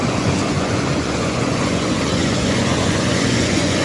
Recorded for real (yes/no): no